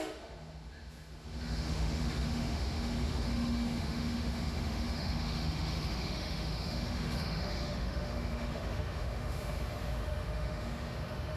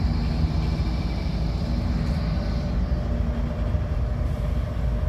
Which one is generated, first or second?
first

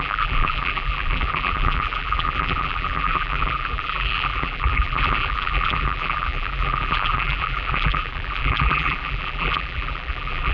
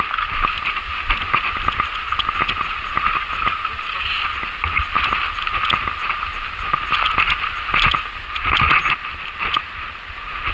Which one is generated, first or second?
first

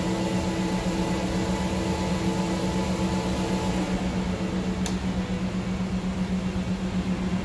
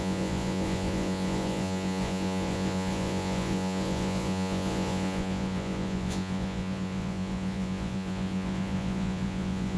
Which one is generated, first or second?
second